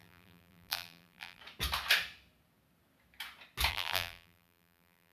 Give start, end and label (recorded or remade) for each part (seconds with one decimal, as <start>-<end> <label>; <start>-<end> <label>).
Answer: 0.0-1.4 remade; 1.4-3.7 recorded; 3.7-5.1 remade